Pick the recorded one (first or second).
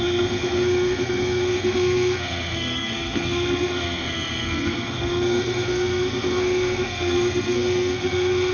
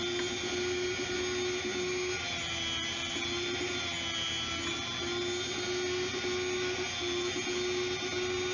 second